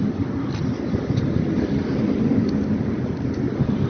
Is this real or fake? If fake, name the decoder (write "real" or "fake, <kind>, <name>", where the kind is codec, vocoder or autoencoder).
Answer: fake, vocoder, BigVGAN v2